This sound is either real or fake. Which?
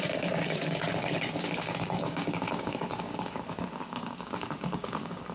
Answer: fake